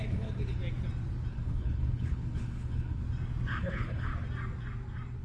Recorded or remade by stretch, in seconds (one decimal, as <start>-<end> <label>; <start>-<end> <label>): 0.0-0.6 remade; 0.6-1.3 recorded; 1.3-3.0 remade; 3.0-3.6 recorded; 3.6-4.1 remade; 4.1-5.2 recorded